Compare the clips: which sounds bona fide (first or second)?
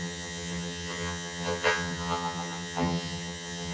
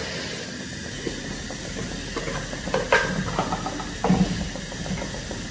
second